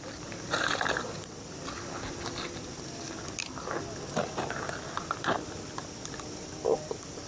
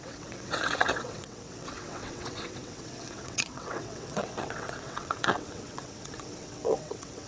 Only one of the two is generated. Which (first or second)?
second